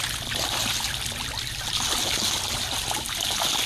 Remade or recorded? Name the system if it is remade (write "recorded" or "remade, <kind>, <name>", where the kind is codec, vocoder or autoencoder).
recorded